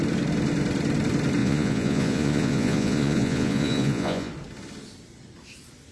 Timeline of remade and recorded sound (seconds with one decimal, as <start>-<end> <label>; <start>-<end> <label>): 0.0-1.4 recorded; 1.4-4.3 remade; 4.3-5.9 recorded